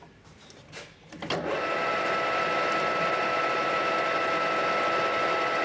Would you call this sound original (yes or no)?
yes